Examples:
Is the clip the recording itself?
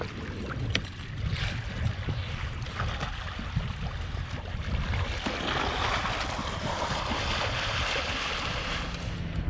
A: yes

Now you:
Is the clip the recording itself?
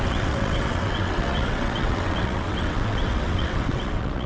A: no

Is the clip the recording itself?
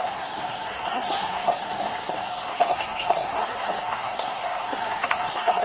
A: no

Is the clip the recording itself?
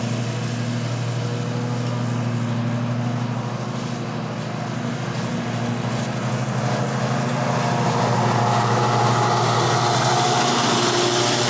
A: yes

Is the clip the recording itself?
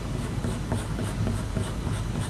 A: no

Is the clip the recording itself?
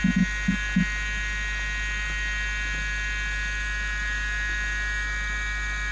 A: yes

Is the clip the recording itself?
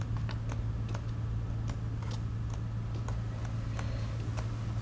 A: yes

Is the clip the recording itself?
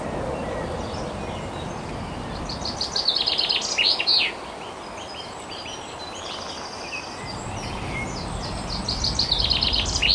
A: yes